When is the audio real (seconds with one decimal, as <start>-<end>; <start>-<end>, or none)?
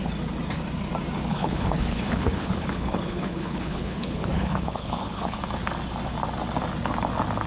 0.0-1.3; 5.4-7.5